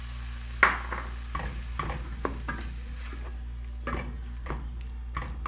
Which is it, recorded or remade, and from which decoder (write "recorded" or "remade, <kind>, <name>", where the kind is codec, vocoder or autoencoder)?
recorded